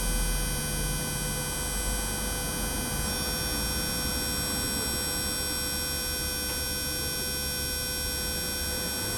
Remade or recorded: recorded